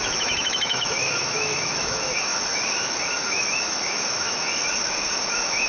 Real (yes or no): no